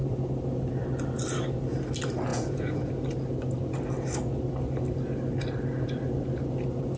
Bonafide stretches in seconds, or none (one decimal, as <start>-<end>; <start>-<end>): 0.0-2.3; 2.9-7.0